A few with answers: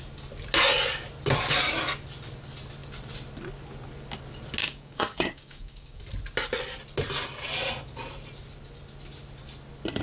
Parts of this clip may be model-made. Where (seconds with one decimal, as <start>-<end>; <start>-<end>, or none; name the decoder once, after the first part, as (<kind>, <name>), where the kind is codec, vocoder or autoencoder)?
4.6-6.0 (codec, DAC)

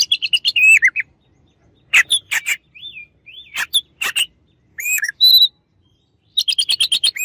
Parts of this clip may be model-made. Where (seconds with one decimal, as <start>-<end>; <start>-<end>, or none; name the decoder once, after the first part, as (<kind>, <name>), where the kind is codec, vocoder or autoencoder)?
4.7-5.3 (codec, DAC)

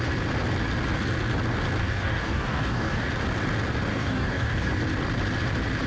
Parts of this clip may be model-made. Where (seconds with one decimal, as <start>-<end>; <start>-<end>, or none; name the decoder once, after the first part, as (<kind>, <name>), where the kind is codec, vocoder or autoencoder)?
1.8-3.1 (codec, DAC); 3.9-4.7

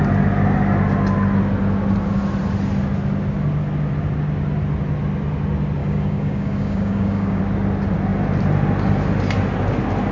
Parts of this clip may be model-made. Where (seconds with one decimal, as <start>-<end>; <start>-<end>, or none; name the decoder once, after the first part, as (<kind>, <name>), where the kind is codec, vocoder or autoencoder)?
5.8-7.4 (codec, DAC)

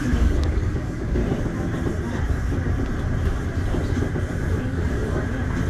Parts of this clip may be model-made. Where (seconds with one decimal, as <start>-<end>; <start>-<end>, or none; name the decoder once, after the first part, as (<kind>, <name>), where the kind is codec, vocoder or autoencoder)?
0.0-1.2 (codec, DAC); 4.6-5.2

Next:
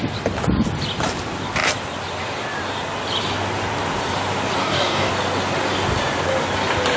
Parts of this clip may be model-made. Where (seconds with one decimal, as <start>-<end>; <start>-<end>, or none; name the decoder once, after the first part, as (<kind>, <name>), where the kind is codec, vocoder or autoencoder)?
4.6-5.1 (codec, DAC)

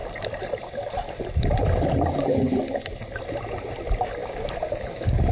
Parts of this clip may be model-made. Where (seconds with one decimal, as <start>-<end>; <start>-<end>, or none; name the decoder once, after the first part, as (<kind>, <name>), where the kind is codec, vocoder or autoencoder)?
4.2-5.3 (codec, DAC)